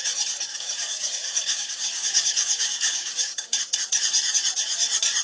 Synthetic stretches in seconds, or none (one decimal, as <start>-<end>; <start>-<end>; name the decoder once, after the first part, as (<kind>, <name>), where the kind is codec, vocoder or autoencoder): 0.5-3.6 (codec, DAC)